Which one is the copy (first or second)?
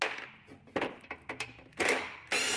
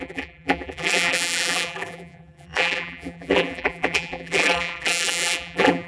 second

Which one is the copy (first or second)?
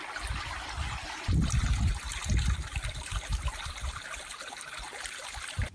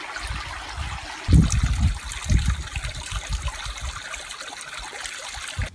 first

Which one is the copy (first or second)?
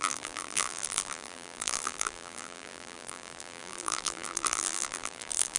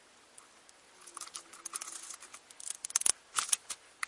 first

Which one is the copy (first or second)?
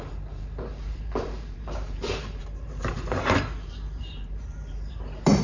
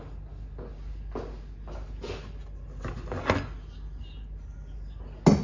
first